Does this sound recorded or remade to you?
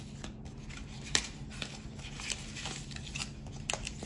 recorded